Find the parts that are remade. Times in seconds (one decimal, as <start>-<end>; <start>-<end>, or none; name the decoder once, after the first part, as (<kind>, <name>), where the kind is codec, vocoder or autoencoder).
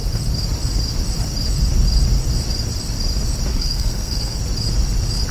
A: 3.5-4.4 (codec, SNAC)